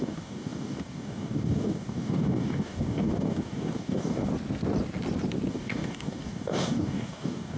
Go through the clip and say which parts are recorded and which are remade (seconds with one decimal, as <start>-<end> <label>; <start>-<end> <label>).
0.0-4.3 remade; 4.3-5.5 recorded; 5.5-7.6 remade